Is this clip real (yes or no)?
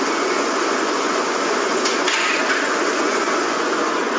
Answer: no